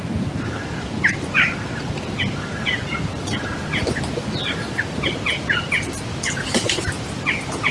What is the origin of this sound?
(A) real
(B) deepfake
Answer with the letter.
A